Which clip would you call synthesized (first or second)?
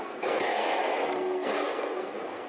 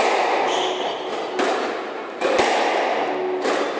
first